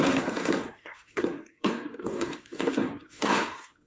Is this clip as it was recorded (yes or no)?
no